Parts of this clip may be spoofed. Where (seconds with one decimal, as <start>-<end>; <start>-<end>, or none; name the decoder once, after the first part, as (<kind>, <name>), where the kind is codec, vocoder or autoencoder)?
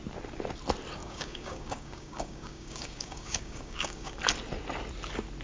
1.0-4.2 (codec, DAC)